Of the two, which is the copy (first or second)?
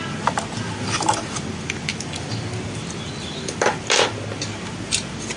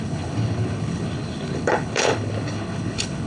second